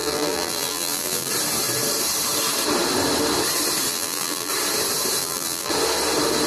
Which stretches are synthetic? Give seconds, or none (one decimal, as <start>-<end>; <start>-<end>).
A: 0.0-1.3; 3.9-4.5; 5.2-5.7